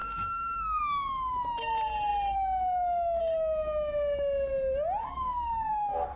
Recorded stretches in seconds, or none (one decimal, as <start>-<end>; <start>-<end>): 0.8-5.0